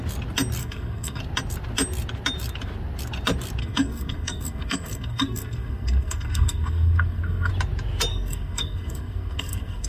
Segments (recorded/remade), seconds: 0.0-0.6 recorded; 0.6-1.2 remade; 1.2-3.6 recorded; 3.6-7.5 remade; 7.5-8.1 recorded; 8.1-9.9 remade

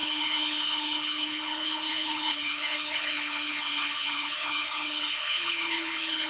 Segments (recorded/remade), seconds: 0.0-6.3 remade